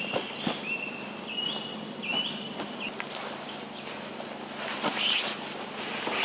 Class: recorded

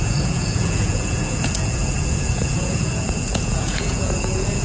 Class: remade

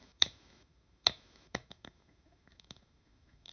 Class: remade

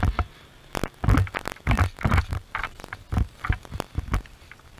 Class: recorded